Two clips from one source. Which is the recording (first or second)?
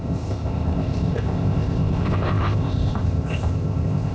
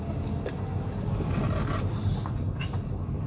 second